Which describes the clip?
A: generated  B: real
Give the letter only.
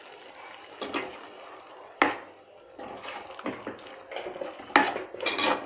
B